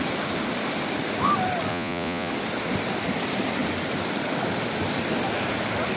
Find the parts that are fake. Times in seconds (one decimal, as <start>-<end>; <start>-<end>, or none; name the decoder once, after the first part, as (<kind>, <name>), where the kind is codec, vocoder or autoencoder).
1.7-2.3 (vocoder, Vocos)